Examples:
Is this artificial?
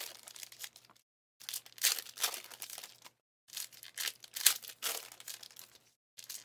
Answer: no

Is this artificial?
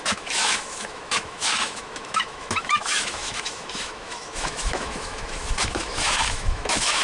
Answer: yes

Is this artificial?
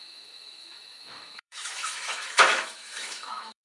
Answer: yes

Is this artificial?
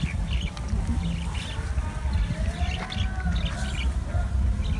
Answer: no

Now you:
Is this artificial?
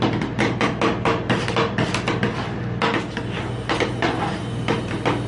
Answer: no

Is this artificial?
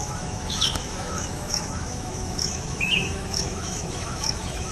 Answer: yes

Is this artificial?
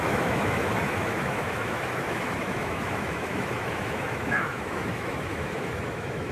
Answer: yes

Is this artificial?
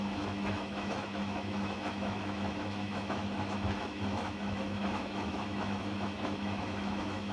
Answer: yes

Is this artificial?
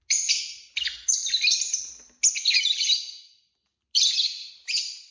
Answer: no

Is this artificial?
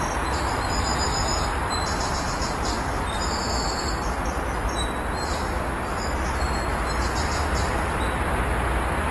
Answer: no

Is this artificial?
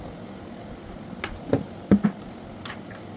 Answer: no